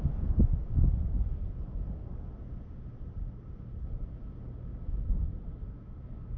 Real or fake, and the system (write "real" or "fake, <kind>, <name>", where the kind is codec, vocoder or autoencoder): real